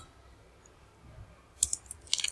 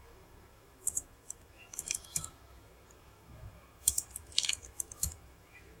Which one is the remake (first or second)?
second